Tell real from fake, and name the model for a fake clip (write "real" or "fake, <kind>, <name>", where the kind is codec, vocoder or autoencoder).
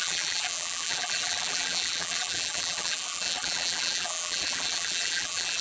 fake, vocoder, BigVGAN v2